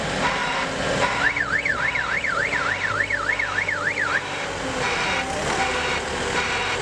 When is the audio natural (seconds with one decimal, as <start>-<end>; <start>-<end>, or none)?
0.0-1.7; 2.3-6.8